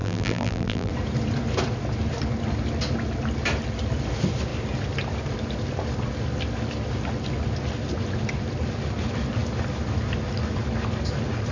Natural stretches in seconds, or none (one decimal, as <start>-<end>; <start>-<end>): 0.9-11.5

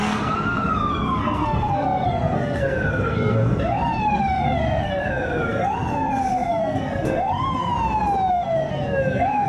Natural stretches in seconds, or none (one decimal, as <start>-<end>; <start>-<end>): 7.7-8.3